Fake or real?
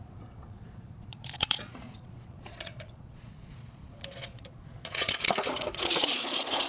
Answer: fake